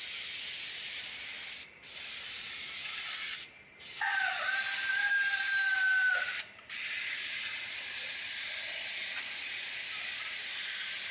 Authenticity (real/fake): real